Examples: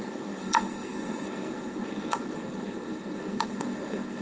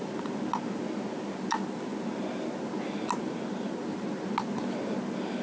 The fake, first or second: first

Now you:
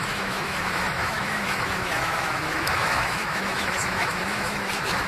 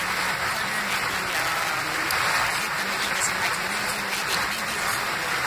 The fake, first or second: first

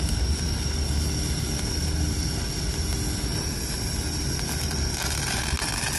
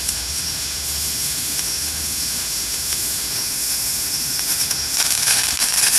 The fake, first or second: second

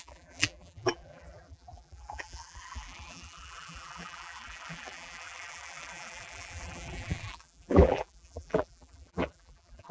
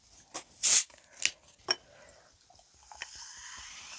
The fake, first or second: first